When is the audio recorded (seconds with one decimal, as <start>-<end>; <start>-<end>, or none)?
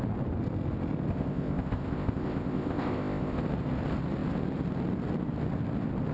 0.0-1.1; 3.4-6.1